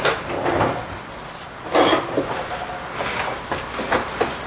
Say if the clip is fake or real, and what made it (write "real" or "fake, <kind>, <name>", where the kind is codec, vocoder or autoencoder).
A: real